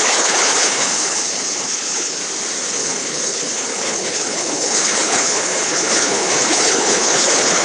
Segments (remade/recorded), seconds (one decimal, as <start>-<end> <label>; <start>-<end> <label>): 0.0-2.2 remade; 2.2-2.7 recorded; 2.7-7.6 remade